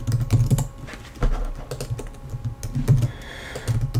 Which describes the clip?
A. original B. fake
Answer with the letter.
A